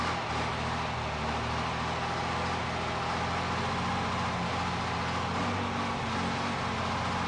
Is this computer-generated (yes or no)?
no